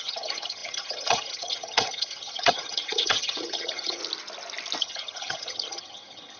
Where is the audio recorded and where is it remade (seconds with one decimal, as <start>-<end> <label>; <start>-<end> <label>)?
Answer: 0.0-4.0 remade; 4.0-4.8 recorded; 4.8-6.4 remade